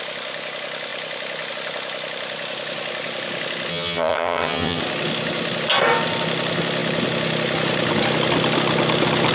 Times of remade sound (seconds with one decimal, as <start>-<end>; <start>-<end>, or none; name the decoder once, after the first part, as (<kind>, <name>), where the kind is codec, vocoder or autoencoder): 3.7-4.8 (vocoder, HiFi-GAN)